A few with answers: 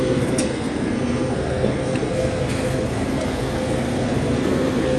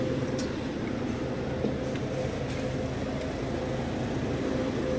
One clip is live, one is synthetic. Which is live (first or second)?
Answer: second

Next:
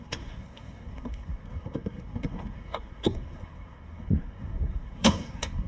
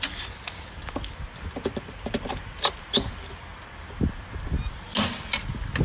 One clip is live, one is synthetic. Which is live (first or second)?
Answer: second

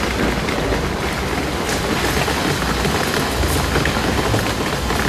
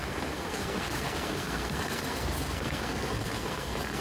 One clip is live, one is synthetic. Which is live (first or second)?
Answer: first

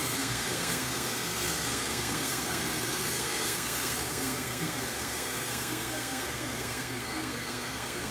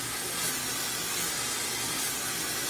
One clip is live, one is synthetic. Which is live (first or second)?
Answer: second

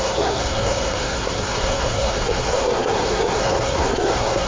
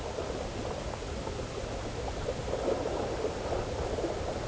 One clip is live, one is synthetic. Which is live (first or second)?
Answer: second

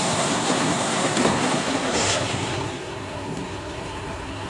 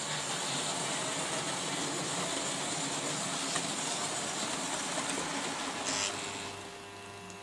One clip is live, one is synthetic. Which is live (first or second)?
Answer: second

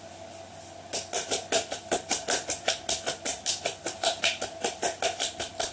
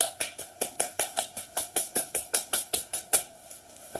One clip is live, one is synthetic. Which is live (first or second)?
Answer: first